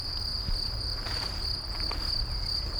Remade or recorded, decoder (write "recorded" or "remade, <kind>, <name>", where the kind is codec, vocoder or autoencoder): recorded